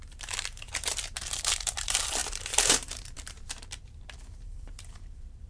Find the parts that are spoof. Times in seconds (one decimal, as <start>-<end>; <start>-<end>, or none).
0.0-5.5